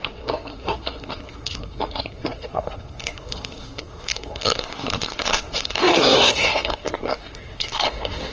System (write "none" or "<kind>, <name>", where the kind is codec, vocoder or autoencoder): codec, SNAC